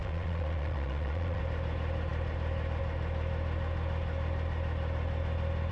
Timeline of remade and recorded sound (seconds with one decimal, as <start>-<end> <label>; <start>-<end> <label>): 0.0-1.4 remade; 1.4-5.7 recorded